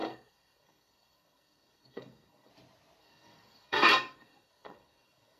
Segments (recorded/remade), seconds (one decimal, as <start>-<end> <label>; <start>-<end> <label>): 0.0-2.5 remade; 2.5-3.0 recorded; 3.0-5.4 remade